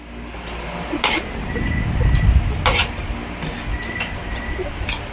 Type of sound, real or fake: real